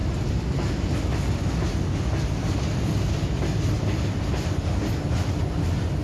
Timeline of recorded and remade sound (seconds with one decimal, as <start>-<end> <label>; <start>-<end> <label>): 0.0-6.0 recorded

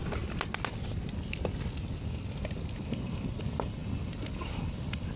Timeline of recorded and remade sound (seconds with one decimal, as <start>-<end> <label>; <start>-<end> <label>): 0.0-5.2 recorded

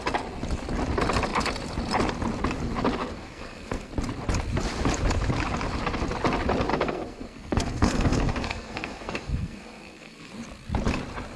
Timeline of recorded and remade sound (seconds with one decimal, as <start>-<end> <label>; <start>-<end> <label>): 0.0-3.0 recorded; 3.0-3.9 remade; 3.9-6.7 recorded; 6.7-10.3 remade; 10.3-11.4 recorded

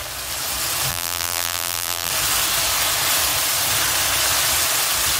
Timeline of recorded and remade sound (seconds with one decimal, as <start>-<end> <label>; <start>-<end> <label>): 0.0-0.9 recorded; 0.9-2.1 remade; 2.1-5.2 recorded

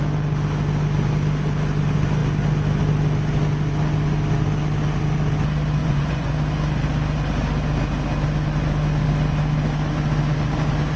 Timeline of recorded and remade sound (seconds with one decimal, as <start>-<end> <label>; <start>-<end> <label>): 0.0-5.8 recorded; 5.8-6.3 remade; 6.3-11.0 recorded